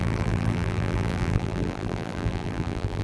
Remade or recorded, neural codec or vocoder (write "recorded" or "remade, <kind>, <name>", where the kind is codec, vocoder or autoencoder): remade, vocoder, BigVGAN v2